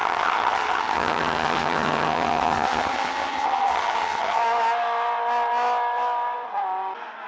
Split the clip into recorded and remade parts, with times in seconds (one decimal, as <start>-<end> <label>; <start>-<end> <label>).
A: 0.0-4.4 remade; 4.4-7.3 recorded